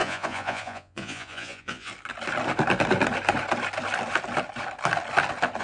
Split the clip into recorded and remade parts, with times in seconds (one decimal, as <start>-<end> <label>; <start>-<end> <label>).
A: 0.0-1.9 remade; 1.9-5.6 recorded